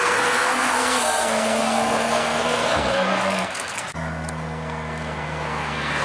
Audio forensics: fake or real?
fake